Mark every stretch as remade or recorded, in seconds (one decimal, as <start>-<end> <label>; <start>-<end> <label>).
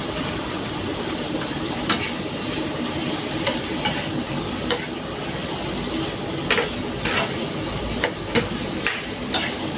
0.0-3.2 remade; 3.2-7.3 recorded; 7.3-9.8 remade